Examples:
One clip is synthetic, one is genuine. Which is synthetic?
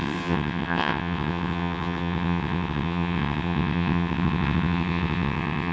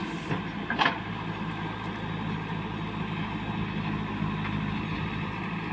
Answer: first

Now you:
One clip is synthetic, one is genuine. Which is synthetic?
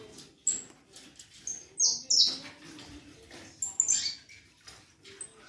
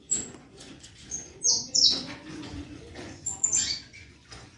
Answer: second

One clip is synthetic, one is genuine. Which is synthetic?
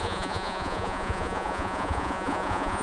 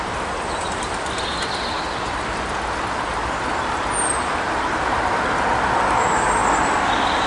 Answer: first